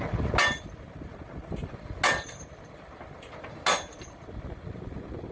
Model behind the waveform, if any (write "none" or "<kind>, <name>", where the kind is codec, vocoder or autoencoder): none